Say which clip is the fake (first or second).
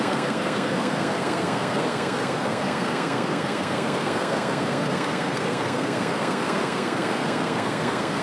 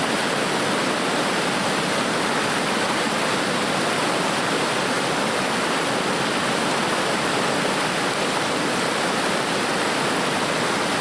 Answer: first